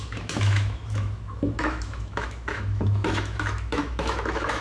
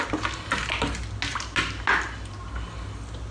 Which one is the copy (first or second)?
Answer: first